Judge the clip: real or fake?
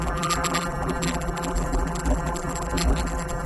fake